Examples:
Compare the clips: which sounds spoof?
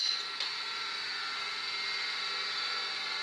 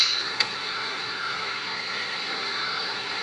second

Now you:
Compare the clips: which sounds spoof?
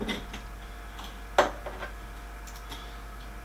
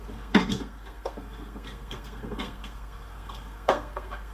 second